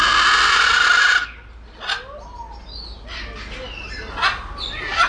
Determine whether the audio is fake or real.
real